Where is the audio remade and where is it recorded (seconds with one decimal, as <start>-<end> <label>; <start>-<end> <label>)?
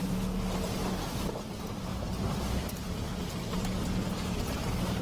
0.0-1.5 recorded; 1.5-5.0 remade